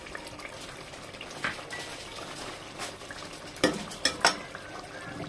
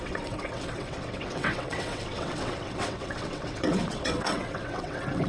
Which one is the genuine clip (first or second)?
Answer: first